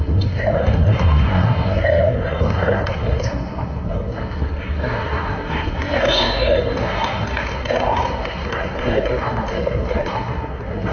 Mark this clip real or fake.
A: fake